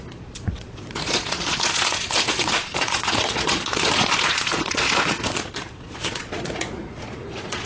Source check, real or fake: fake